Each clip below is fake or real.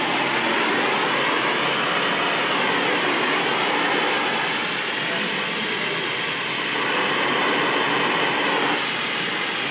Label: real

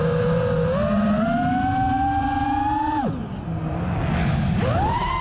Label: real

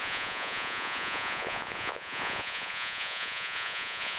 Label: fake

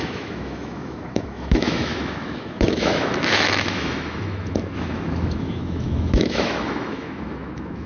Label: fake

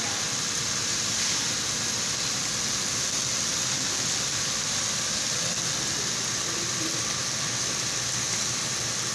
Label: real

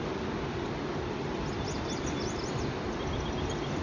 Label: real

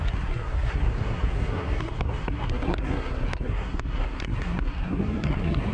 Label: fake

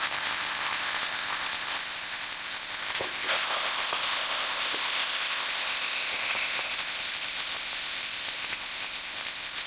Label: fake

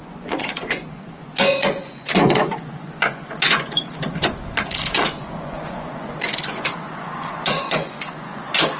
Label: fake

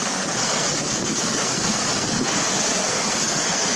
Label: fake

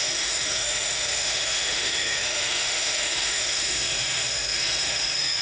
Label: fake